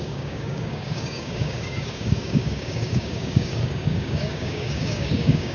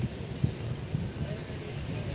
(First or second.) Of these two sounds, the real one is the second